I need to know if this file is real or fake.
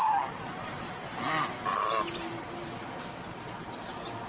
real